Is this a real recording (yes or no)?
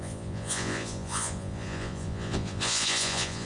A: no